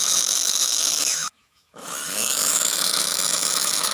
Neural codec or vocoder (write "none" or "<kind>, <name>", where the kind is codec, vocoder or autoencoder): autoencoder, DAC-VAE